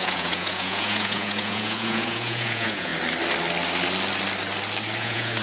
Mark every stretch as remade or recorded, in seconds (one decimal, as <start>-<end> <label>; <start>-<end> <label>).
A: 0.0-2.9 remade; 2.9-5.0 recorded; 5.0-5.4 remade